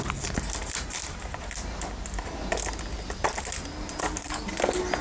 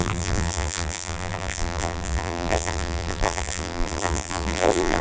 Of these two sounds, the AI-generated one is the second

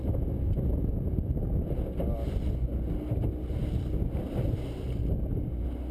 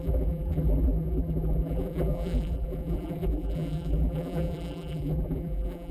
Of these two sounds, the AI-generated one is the second